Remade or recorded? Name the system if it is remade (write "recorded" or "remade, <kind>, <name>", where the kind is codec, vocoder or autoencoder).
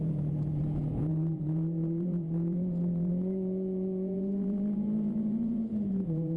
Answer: remade, vocoder, Vocos